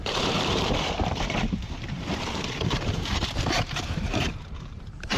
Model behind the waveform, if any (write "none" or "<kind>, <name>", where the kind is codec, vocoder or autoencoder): vocoder, BigVGAN v2